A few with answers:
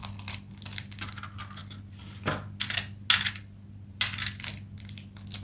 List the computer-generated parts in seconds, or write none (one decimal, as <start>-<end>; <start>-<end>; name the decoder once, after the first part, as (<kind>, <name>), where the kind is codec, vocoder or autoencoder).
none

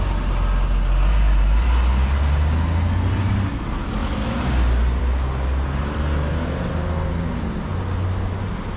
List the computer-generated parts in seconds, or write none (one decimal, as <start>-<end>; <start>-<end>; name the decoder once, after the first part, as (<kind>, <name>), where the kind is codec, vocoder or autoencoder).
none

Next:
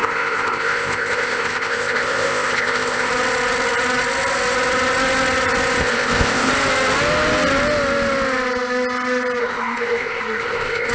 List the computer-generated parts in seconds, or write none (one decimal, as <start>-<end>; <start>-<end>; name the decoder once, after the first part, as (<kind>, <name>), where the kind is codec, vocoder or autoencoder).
0.0-3.1 (codec, ZipCodec); 5.8-6.5; 9.4-10.9